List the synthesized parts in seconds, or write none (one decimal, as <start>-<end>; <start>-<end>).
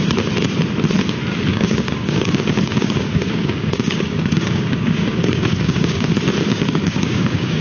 1.5-6.1; 6.5-7.6